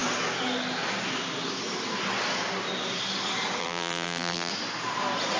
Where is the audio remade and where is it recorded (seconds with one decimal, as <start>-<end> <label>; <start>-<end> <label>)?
0.0-3.6 recorded; 3.6-4.5 remade; 4.5-5.4 recorded